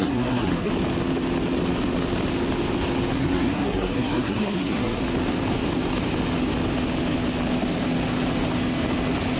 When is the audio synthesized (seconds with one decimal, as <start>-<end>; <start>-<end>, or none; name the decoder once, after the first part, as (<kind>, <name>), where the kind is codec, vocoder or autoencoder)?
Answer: 0.0-0.7 (codec, SNAC); 3.1-5.0